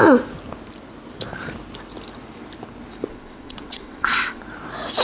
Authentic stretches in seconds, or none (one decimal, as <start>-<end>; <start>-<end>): 0.0-3.1; 4.4-5.0